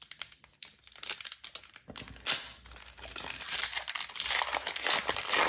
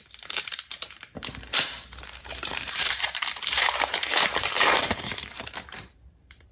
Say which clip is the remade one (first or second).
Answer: second